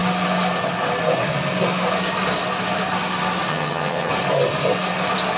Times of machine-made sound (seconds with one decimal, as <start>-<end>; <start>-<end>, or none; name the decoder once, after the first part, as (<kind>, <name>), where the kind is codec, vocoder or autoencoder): 3.5-4.1 (vocoder, HiFi-GAN)